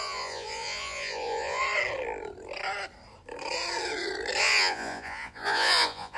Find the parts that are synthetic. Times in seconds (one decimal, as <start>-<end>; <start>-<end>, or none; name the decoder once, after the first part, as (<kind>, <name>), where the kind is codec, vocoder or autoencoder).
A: 0.0-1.6 (vocoder, Vocos); 4.4-6.2